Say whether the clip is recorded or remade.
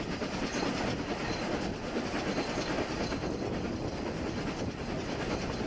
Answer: recorded